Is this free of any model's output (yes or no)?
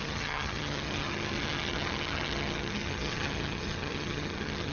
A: no